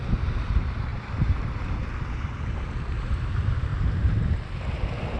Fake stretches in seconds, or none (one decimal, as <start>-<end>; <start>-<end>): 0.9-2.4; 3.7-4.4